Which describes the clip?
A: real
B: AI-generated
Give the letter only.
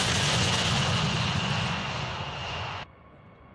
B